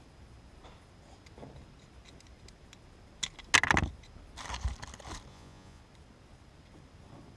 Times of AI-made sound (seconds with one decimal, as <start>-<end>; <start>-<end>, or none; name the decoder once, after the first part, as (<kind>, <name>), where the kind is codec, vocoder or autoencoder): 5.3-5.8 (vocoder, Vocos)